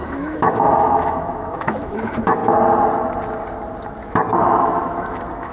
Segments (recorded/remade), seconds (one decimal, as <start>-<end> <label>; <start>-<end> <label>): 0.0-2.4 remade; 2.4-4.4 recorded; 4.4-5.5 remade